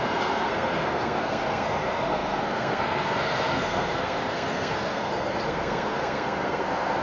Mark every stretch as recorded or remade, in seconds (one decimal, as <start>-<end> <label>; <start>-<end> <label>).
0.0-7.0 remade